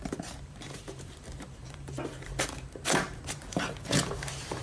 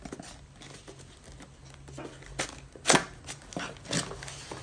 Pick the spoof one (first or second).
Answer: first